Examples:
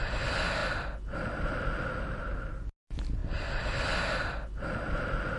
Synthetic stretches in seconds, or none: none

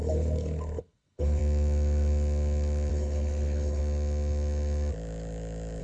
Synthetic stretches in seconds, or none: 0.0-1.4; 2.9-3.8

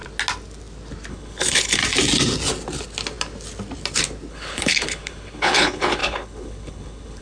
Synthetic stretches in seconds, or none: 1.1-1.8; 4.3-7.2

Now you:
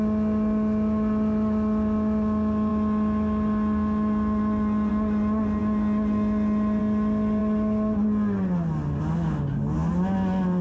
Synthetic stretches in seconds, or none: none

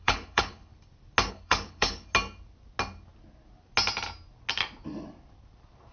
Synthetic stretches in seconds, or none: 0.0-0.7; 1.3-2.1

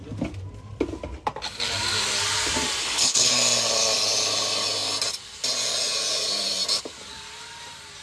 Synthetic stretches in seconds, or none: 2.8-3.3

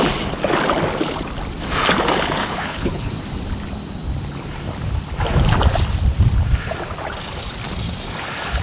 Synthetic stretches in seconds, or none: 2.4-3.1